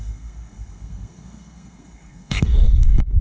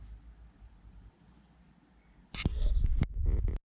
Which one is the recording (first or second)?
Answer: second